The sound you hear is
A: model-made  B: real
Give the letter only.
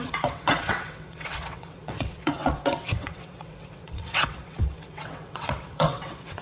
A